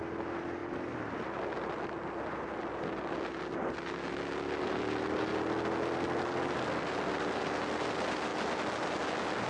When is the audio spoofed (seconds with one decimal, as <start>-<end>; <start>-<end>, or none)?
none